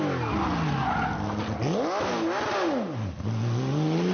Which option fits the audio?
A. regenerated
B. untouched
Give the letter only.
B